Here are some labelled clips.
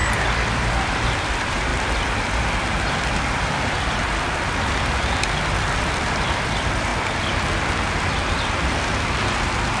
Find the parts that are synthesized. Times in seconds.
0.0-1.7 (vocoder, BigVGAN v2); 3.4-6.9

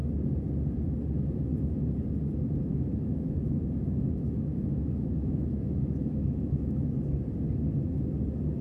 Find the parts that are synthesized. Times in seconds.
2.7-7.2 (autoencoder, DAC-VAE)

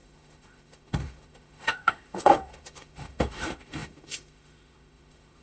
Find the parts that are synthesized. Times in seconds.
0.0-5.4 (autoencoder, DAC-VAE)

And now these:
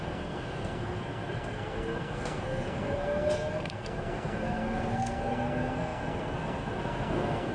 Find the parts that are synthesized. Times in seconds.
0.0-7.5 (codec, SNAC)